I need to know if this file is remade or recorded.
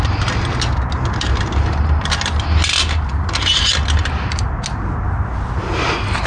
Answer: recorded